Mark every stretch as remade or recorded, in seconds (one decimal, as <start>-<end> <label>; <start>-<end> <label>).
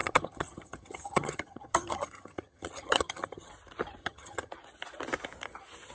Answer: 0.0-3.5 remade; 3.5-4.0 recorded; 4.0-4.5 remade; 4.5-5.9 recorded